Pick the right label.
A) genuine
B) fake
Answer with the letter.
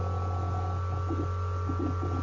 A